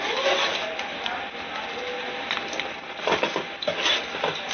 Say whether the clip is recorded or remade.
remade